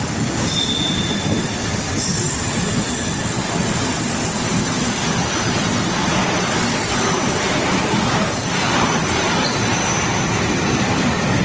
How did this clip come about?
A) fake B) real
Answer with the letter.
B